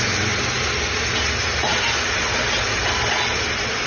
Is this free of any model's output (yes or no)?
yes